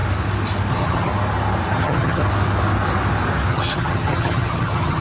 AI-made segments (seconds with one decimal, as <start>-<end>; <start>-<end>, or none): 0.7-1.1; 1.7-2.2; 3.5-5.0